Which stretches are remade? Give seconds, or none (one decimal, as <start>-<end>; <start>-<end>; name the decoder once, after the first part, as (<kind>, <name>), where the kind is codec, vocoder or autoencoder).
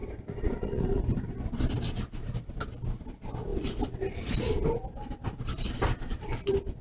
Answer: 0.0-1.0 (vocoder, Vocos)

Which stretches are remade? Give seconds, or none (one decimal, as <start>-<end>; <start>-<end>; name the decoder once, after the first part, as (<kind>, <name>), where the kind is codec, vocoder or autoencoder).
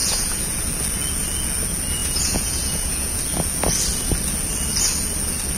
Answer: 0.0-0.6 (vocoder, Vocos); 2.0-3.2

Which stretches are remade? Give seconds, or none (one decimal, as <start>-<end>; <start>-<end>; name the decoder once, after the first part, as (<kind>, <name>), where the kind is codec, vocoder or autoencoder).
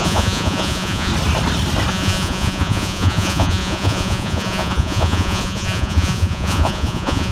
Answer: 0.0-1.1 (vocoder, Vocos); 1.9-7.3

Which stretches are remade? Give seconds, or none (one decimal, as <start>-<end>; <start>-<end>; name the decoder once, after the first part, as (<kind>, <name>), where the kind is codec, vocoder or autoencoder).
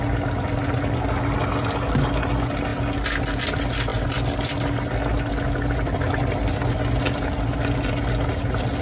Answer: none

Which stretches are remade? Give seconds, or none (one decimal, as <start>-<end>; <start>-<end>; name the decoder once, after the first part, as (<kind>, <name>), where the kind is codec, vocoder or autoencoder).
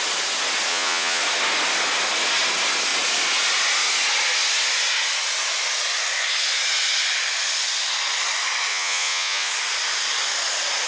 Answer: 0.7-1.2 (vocoder, Vocos); 8.7-9.5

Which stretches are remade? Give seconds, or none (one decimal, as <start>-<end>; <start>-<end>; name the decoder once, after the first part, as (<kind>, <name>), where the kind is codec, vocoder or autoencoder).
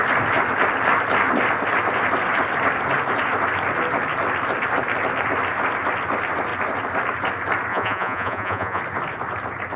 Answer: 7.7-8.8 (vocoder, Vocos)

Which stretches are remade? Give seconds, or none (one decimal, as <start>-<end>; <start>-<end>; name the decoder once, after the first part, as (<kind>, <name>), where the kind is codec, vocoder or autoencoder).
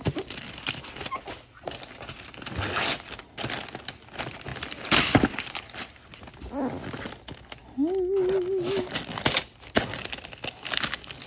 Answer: none